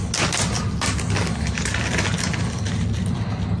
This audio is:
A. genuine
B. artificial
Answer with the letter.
A